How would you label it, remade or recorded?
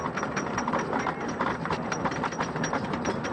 remade